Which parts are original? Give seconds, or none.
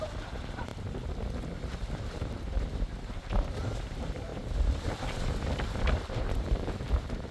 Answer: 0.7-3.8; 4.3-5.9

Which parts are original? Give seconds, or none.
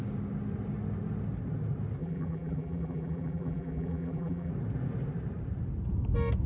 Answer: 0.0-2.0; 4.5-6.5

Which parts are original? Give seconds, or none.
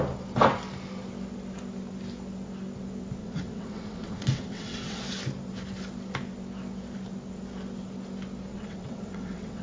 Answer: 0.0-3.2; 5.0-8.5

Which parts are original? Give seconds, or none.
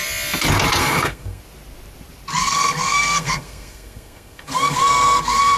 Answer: 0.0-0.8; 1.4-2.4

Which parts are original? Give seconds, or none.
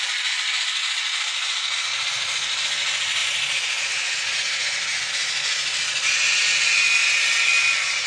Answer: 0.0-8.1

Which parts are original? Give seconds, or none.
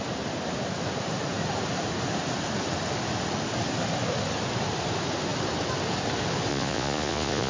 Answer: 0.0-6.5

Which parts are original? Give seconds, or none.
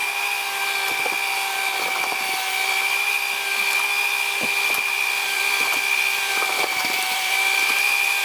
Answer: 0.0-4.7